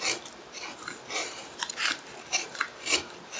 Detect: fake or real fake